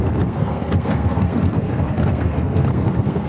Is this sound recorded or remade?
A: remade